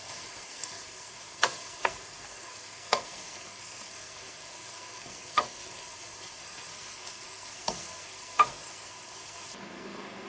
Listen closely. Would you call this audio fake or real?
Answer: fake